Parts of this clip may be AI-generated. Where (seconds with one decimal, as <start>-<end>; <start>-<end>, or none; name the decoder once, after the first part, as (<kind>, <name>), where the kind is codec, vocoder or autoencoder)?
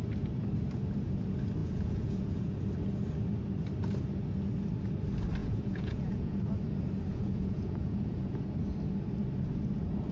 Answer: 1.6-2.6 (vocoder, Vocos); 5.4-6.5; 7.1-8.4